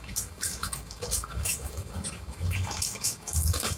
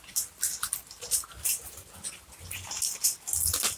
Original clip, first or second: second